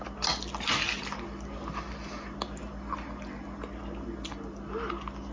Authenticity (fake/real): real